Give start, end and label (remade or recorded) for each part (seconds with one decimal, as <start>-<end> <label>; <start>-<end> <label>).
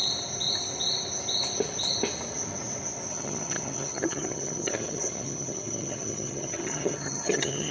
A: 0.0-3.1 recorded; 3.1-7.7 remade